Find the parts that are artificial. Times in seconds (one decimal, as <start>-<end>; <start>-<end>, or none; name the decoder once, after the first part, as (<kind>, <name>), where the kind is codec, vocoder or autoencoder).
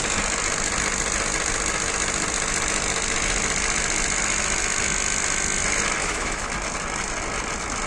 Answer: 6.0-6.5 (autoencoder, DAC-VAE)